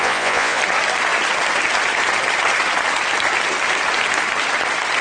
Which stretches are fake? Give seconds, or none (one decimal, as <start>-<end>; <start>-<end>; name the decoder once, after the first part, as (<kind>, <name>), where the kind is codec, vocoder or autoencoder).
0.0-0.6 (vocoder, Vocos)